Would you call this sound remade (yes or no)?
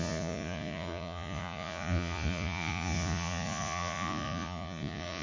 yes